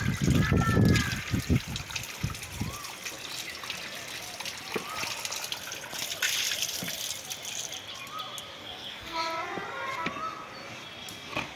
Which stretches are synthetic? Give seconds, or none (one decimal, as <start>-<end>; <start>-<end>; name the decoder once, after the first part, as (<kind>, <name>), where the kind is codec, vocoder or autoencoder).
8.6-9.2 (codec, SNAC)